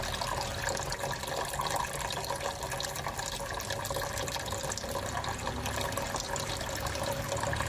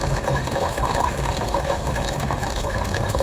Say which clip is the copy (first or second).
second